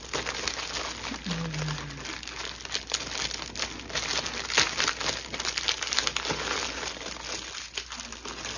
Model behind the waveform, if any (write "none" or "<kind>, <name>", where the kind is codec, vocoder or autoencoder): none